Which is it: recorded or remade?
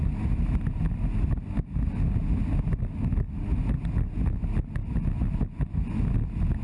recorded